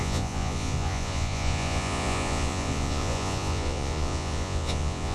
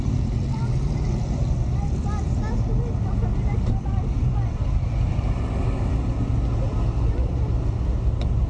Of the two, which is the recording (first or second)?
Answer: second